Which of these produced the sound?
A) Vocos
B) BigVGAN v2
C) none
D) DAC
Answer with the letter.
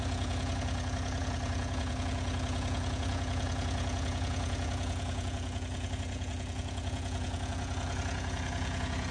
A